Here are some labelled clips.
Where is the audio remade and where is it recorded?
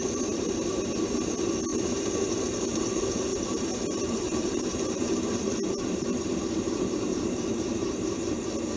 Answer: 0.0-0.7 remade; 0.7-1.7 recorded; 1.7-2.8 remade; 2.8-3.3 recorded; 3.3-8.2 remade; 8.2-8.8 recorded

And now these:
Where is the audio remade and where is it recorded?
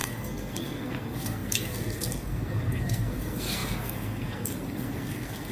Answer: 0.0-5.5 remade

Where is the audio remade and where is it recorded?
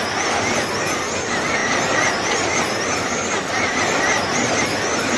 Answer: 0.0-5.2 recorded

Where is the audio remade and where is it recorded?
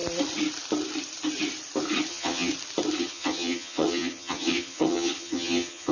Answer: 0.0-2.1 recorded; 2.1-2.5 remade; 2.5-3.0 recorded; 3.0-5.9 remade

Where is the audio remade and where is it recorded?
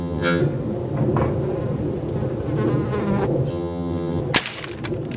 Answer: 0.0-0.4 remade; 0.4-3.5 recorded; 3.5-4.2 remade; 4.2-5.2 recorded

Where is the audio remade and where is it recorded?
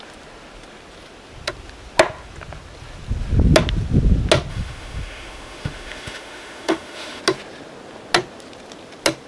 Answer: 0.0-4.5 recorded; 4.5-7.2 remade; 7.2-9.3 recorded